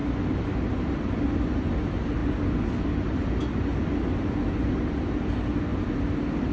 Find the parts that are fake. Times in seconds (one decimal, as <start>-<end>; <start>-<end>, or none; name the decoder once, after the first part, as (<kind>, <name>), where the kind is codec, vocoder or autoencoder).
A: none